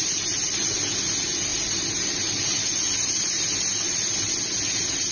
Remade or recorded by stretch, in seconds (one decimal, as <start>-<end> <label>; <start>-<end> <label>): 0.0-5.1 recorded